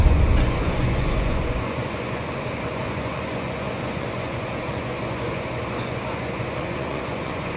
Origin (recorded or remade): remade